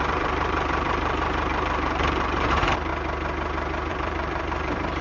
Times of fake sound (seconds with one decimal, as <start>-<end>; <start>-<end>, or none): 0.0-2.9; 3.9-5.0